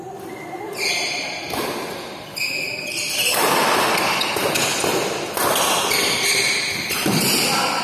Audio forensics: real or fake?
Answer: real